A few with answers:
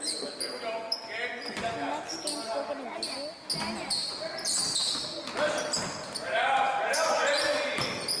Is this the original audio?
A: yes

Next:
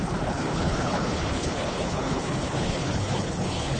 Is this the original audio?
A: no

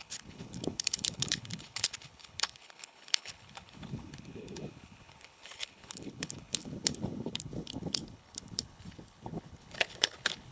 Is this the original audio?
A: no